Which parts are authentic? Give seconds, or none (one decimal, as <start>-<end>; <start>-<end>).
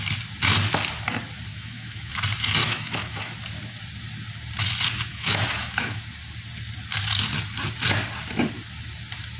0.0-1.5; 2.1-2.6; 3.3-5.1; 6.0-9.4